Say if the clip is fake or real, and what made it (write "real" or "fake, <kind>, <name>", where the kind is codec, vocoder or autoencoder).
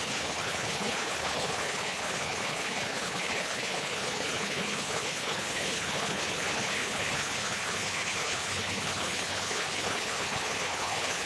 fake, codec, HILCodec